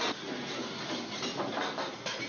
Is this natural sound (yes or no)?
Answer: yes